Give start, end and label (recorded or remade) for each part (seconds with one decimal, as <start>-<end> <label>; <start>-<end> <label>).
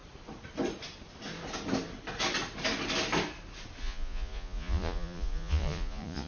0.0-3.8 recorded; 3.8-6.3 remade